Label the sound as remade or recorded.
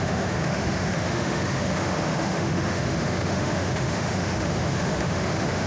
remade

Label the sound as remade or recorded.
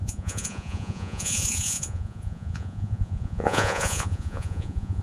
remade